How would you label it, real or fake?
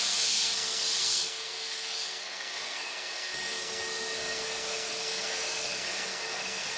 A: fake